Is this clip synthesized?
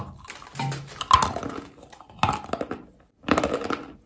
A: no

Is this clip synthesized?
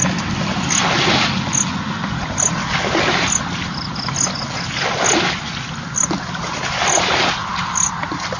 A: no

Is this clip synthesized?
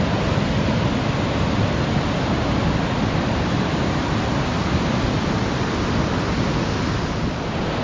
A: no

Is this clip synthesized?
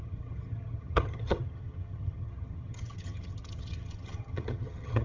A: yes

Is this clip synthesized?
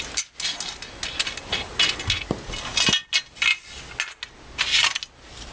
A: no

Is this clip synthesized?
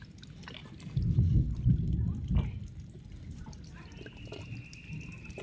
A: no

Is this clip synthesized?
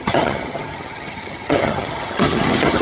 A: yes